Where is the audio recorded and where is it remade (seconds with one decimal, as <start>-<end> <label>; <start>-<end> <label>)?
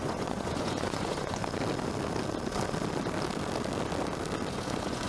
0.0-1.4 remade; 1.4-4.5 recorded; 4.5-5.1 remade